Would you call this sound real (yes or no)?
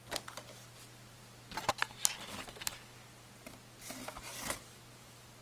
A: yes